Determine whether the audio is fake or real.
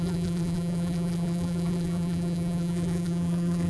fake